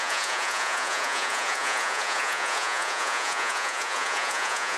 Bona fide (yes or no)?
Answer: no